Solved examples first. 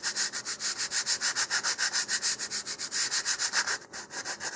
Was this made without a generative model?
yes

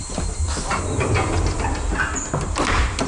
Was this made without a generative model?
yes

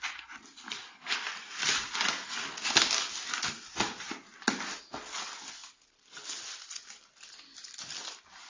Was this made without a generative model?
yes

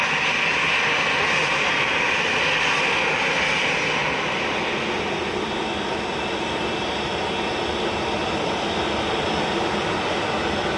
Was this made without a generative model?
yes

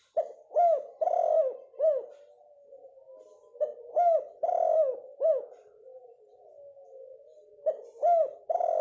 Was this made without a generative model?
yes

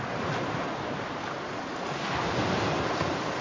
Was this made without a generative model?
yes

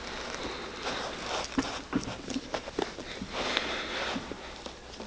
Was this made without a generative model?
yes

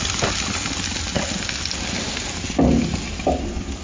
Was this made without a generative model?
yes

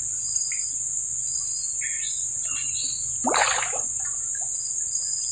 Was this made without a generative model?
yes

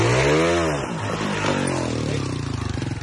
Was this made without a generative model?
yes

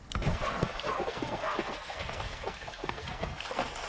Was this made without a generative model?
no